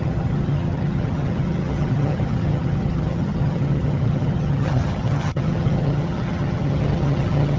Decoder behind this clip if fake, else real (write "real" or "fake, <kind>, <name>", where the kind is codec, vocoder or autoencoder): fake, vocoder, HiFi-GAN